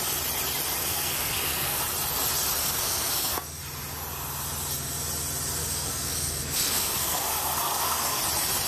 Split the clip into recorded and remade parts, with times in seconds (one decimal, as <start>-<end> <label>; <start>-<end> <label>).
0.0-0.8 recorded; 0.8-1.8 remade; 1.8-2.6 recorded; 2.6-3.6 remade; 3.6-5.6 recorded; 5.6-8.2 remade; 8.2-8.7 recorded